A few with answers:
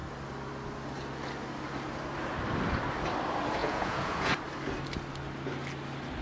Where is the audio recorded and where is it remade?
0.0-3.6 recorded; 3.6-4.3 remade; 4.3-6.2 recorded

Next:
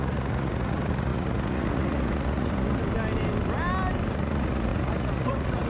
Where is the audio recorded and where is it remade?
0.0-2.8 remade; 2.8-4.1 recorded; 4.1-5.7 remade

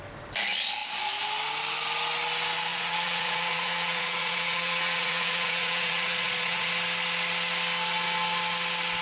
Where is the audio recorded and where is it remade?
0.0-2.7 recorded; 2.7-6.7 remade; 6.7-9.0 recorded

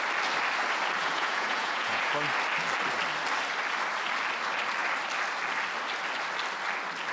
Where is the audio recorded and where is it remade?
0.0-1.0 recorded; 1.0-2.1 remade; 2.1-7.1 recorded

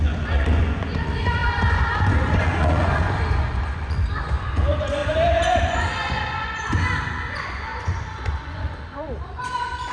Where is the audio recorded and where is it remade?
0.0-5.0 remade; 5.0-5.6 recorded; 5.6-9.9 remade

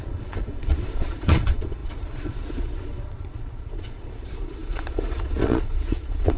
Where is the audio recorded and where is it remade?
0.0-6.4 remade